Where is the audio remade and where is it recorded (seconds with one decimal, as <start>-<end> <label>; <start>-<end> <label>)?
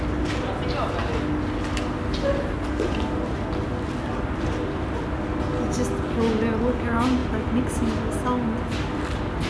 0.0-9.5 recorded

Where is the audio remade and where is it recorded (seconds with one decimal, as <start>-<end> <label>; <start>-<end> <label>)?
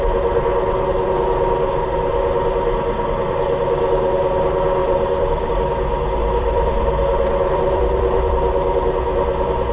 0.0-4.8 recorded; 4.8-5.5 remade; 5.5-6.2 recorded; 6.2-8.3 remade; 8.3-9.7 recorded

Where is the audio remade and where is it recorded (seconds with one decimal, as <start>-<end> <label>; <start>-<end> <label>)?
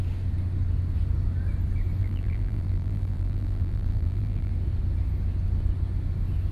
0.0-2.0 recorded; 2.0-4.5 remade; 4.5-6.5 recorded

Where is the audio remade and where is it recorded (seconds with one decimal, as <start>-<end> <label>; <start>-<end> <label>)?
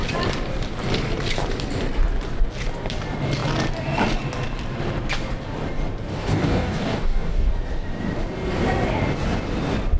0.0-6.1 recorded; 6.1-7.5 remade; 7.5-10.0 recorded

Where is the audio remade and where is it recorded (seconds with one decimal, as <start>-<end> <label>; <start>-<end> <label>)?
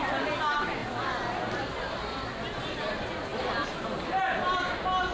0.0-5.1 recorded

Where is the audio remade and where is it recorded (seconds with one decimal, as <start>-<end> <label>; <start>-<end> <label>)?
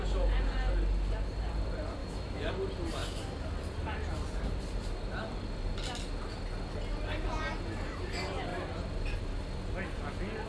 0.0-2.0 recorded; 2.0-2.5 remade; 2.5-10.5 recorded